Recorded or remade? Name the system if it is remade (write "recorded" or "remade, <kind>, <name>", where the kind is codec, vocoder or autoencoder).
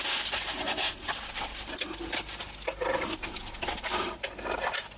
recorded